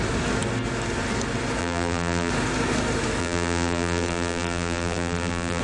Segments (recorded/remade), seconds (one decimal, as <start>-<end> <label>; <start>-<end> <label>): 0.0-1.6 recorded; 1.6-2.3 remade; 2.3-3.2 recorded; 3.2-5.6 remade